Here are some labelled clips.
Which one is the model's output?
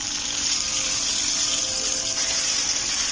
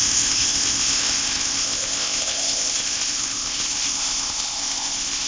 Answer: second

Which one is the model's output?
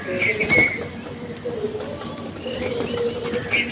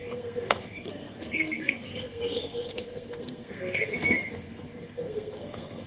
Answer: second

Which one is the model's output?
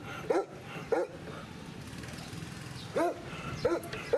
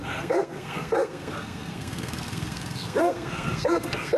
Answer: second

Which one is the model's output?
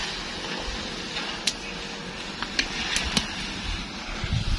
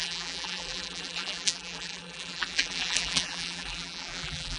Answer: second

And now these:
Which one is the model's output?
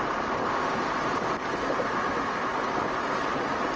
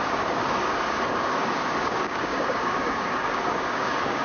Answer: second